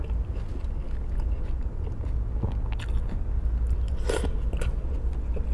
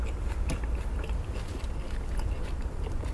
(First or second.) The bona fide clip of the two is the first